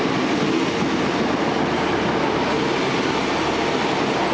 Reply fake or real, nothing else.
real